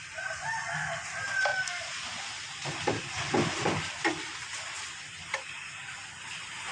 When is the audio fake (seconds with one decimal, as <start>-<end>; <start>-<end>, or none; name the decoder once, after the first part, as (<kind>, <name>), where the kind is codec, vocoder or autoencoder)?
none